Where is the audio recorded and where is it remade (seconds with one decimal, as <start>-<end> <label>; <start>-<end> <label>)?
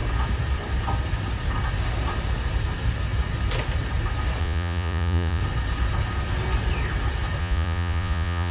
0.0-4.4 recorded; 4.4-5.4 remade; 5.4-7.4 recorded; 7.4-8.5 remade